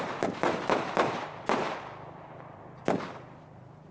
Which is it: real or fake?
real